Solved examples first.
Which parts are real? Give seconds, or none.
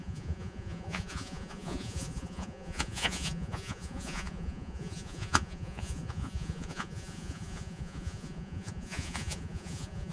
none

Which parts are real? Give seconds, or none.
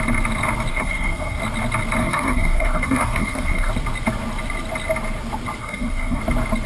0.0-0.7; 1.4-2.0; 3.7-5.6; 6.2-6.7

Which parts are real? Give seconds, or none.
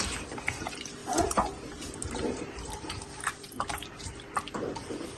0.0-1.0; 3.6-5.2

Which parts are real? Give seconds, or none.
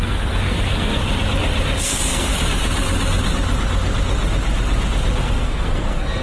1.0-1.8; 2.3-5.2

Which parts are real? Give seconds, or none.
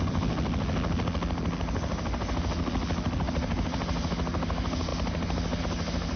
0.0-6.2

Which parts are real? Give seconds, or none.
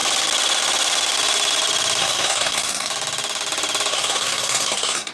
0.0-2.0; 2.9-3.9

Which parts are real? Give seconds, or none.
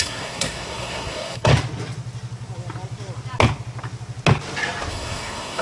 1.5-4.9